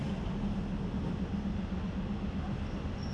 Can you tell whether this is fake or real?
real